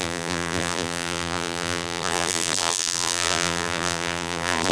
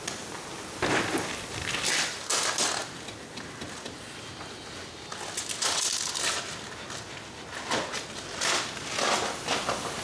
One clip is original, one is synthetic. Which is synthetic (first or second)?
first